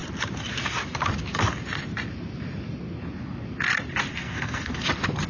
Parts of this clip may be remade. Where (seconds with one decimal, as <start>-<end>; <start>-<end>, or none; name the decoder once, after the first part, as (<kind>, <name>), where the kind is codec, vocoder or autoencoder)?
4.1-4.8 (codec, SNAC)